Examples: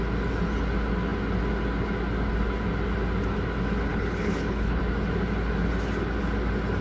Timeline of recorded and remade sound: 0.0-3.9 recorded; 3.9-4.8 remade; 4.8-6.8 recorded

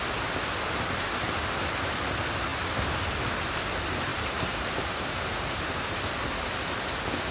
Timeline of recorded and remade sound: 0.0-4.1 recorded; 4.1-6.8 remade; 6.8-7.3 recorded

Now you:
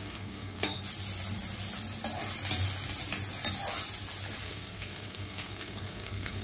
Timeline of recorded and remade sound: 0.0-0.8 remade; 0.8-4.4 recorded; 4.4-6.4 remade